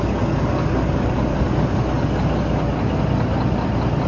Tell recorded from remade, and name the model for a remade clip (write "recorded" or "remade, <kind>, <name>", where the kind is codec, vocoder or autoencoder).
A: recorded